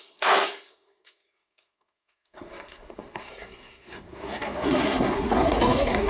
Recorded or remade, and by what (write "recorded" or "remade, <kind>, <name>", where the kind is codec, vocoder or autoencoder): remade, codec, SNAC